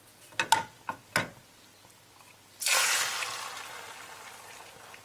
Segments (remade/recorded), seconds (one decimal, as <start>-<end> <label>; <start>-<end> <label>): 0.0-5.0 recorded